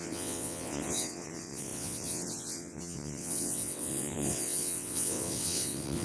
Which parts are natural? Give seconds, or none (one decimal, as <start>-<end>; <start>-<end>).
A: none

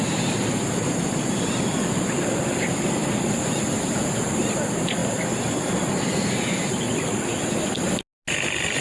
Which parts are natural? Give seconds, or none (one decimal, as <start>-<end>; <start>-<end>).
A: 0.0-8.8

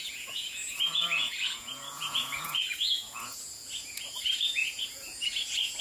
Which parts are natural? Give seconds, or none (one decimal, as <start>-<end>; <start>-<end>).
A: none

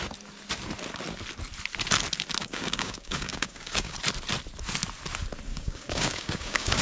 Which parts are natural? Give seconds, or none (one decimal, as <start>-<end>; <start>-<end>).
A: 0.0-2.4; 4.0-5.5

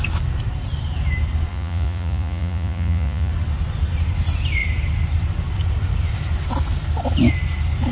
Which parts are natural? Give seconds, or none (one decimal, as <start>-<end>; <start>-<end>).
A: 0.0-1.5; 3.3-7.9